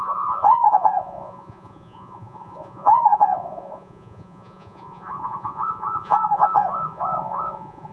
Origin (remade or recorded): remade